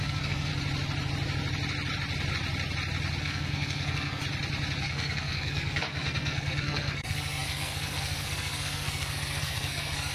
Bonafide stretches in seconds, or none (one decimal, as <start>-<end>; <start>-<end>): 0.5-3.2; 4.2-4.8